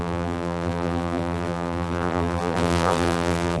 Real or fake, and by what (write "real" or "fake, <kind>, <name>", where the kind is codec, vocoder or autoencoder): fake, vocoder, BigVGAN v2